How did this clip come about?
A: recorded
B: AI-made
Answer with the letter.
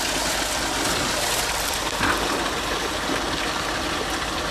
A